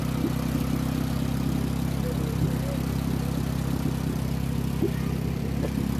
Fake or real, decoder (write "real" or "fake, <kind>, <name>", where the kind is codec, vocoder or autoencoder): real